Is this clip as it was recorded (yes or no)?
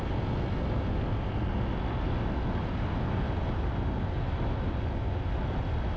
yes